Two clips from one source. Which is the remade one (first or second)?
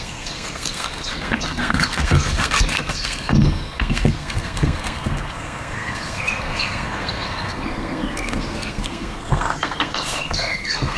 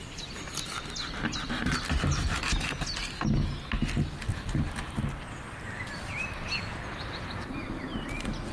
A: first